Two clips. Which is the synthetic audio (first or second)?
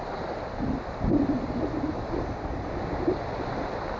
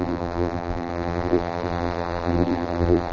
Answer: second